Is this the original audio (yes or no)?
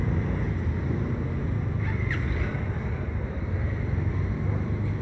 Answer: yes